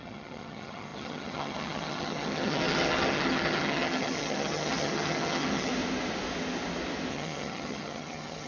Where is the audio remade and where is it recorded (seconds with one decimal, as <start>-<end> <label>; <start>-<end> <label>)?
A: 0.0-5.7 remade; 5.7-7.1 recorded; 7.1-8.5 remade